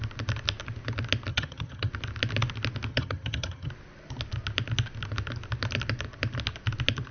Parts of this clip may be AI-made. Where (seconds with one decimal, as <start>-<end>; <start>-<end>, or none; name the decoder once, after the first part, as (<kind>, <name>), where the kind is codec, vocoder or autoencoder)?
1.3-1.9 (vocoder, HiFi-GAN); 2.9-3.7